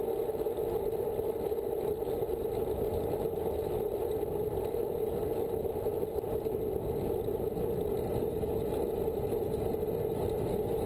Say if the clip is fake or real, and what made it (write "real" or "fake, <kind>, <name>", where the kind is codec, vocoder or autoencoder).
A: real